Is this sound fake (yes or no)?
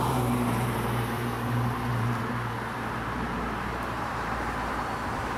yes